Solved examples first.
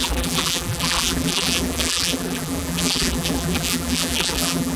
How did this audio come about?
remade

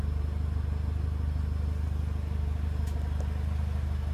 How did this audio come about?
recorded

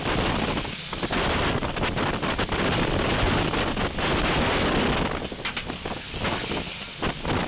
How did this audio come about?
recorded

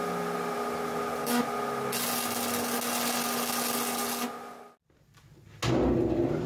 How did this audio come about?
recorded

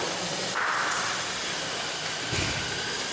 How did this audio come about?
recorded